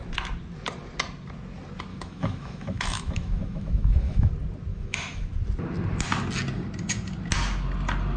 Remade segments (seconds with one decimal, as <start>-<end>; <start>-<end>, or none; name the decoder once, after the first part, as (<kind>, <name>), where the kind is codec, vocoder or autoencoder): 1.9-4.3 (autoencoder, DAC-VAE); 4.7-5.3